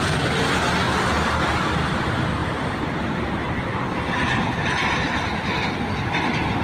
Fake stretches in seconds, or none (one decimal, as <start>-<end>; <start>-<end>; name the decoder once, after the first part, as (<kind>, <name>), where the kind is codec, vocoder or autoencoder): none